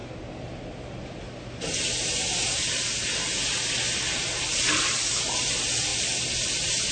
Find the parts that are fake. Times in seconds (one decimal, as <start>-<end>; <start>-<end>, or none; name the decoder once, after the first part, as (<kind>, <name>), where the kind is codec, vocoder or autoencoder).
none